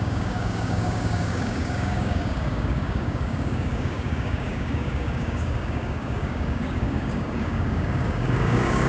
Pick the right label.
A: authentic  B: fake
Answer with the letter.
B